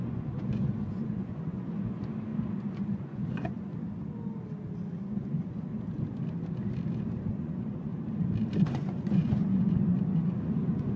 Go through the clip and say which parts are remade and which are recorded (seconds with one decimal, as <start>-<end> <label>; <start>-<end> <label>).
0.0-3.7 remade; 3.7-5.0 recorded; 5.0-5.7 remade; 5.7-7.3 recorded; 7.3-7.9 remade; 7.9-8.7 recorded; 8.7-11.0 remade